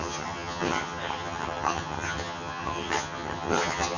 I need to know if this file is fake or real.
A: fake